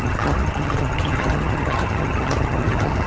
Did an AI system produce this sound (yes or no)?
yes